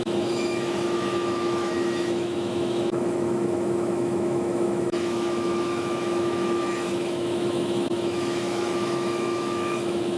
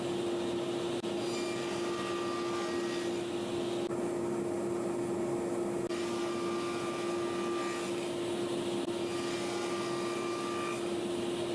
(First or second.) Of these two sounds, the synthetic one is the first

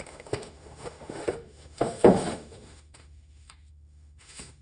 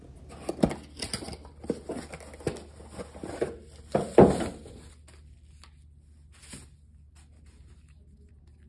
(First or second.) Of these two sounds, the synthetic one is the first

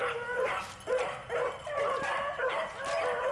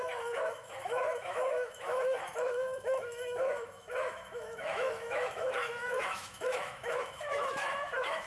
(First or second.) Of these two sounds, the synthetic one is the second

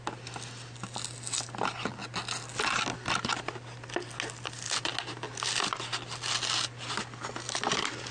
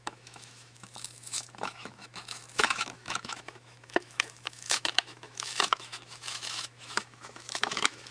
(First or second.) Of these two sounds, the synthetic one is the second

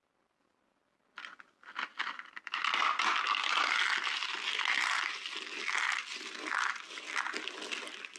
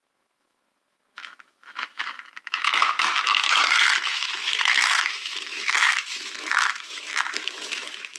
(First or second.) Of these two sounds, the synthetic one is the second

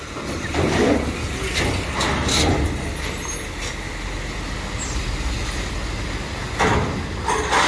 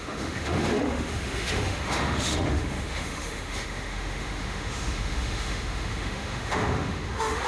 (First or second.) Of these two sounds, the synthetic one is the second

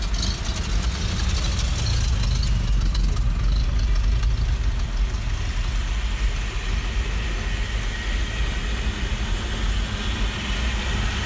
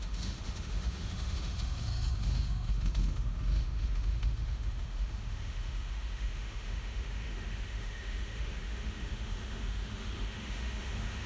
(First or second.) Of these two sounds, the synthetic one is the second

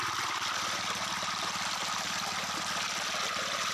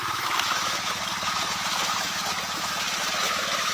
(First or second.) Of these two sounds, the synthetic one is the second